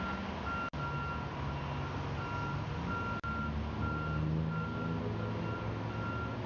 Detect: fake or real real